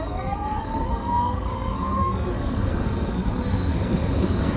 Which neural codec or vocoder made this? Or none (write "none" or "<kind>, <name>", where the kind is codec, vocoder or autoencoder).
codec, SNAC